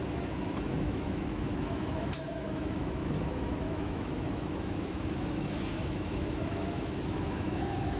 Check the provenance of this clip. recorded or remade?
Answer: remade